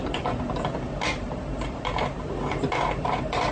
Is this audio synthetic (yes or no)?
no